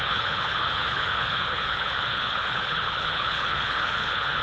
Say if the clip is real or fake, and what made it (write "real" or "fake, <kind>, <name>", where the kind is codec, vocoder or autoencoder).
fake, codec, HILCodec